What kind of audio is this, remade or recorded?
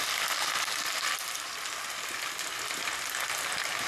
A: recorded